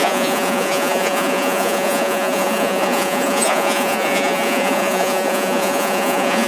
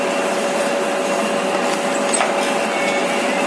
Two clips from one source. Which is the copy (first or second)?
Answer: first